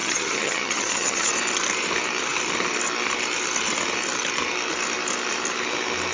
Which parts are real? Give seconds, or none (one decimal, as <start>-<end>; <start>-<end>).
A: 1.3-6.1